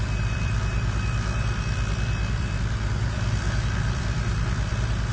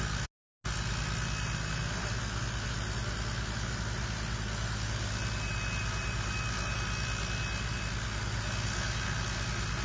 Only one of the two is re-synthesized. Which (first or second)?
first